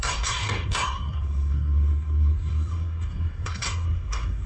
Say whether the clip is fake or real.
fake